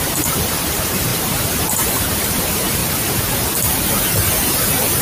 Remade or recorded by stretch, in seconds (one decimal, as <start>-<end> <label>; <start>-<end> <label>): 0.0-2.8 remade; 2.8-5.0 recorded